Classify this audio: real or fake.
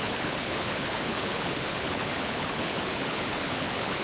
fake